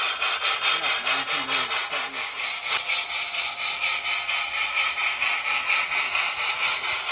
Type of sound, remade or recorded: recorded